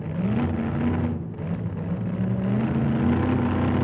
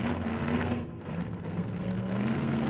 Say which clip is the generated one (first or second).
second